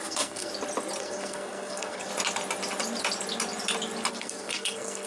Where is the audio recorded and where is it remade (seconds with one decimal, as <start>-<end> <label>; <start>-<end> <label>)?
0.0-0.5 remade; 0.5-1.0 recorded; 1.0-2.1 remade; 2.1-4.1 recorded; 4.1-5.1 remade